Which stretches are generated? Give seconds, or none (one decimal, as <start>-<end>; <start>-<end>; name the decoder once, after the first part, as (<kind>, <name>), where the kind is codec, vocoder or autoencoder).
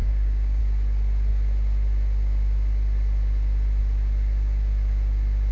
0.0-0.6 (codec, DAC)